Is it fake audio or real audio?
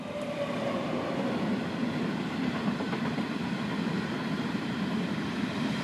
fake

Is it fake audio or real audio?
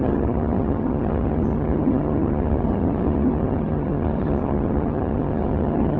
fake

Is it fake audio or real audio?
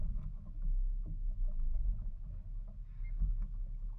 real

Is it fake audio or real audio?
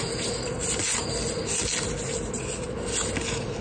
real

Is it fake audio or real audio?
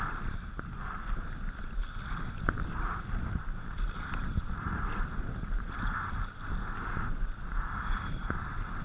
real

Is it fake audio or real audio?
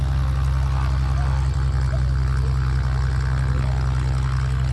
real